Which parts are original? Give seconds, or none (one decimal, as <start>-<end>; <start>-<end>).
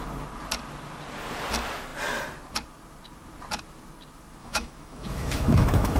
0.0-4.4